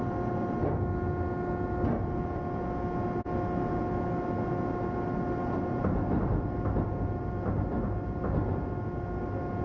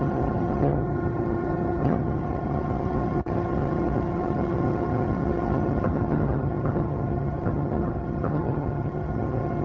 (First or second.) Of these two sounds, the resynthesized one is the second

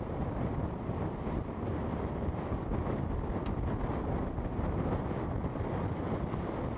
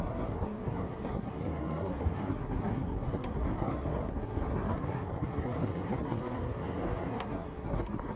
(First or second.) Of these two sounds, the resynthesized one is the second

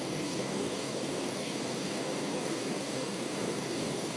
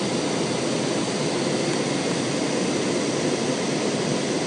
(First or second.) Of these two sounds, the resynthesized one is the first